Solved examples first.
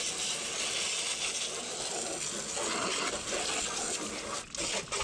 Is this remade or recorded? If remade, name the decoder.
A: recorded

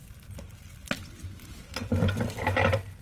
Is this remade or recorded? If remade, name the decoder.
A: recorded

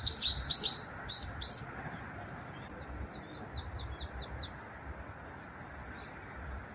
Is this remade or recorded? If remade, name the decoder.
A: recorded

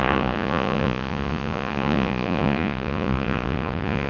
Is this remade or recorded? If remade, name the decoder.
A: remade, vocoder, Vocos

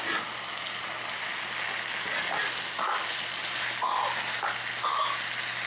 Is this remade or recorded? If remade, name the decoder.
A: recorded